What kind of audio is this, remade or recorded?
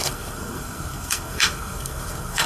remade